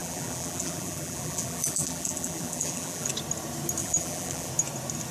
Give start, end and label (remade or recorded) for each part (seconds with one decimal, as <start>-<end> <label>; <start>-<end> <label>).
0.0-3.1 remade; 3.1-3.8 recorded; 3.8-4.5 remade; 4.5-5.1 recorded